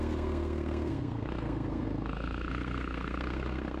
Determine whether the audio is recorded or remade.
remade